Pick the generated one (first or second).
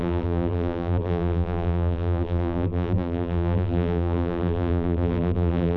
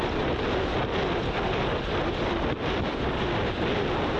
first